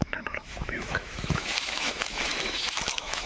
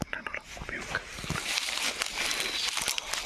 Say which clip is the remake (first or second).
first